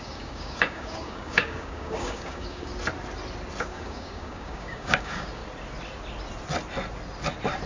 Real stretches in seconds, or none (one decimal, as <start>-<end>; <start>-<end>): 2.7-3.6; 5.4-7.7